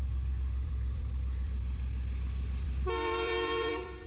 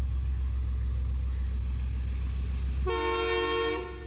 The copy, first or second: first